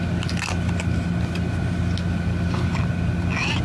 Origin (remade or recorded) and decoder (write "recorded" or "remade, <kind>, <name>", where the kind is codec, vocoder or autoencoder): recorded